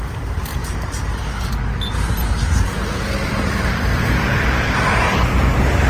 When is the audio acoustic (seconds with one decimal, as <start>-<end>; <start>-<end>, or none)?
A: 0.6-4.1